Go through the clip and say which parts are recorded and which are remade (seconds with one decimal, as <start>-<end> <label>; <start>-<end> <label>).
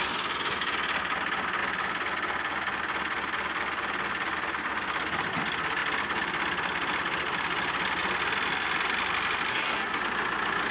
0.0-9.5 recorded; 9.5-10.0 remade; 10.0-10.7 recorded